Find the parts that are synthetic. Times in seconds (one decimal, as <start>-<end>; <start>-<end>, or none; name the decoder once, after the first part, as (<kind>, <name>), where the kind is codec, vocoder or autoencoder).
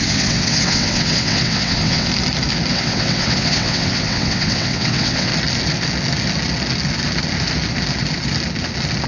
0.0-2.1 (vocoder, WaveNeXt); 2.7-5.3